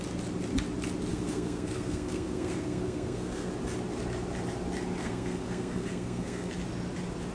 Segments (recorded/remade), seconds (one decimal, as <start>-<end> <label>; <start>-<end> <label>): 0.0-1.1 recorded; 1.1-3.5 remade; 3.5-5.0 recorded; 5.0-6.5 remade; 6.5-7.3 recorded